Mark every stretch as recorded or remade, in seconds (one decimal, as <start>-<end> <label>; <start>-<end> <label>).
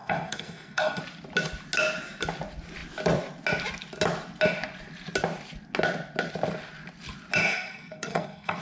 0.0-1.0 remade; 1.0-7.4 recorded; 7.4-8.6 remade